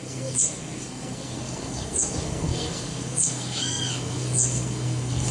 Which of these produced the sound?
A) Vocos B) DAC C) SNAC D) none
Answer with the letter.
C